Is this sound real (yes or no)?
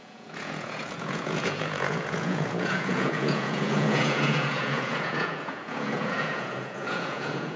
no